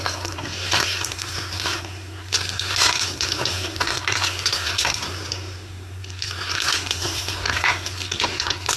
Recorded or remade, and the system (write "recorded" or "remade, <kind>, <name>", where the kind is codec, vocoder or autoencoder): remade, codec, SNAC